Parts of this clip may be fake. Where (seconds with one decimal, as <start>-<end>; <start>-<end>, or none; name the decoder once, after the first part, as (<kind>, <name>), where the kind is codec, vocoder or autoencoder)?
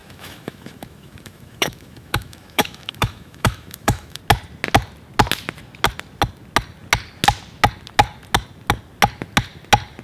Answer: 0.0-4.2 (autoencoder, DAC-VAE)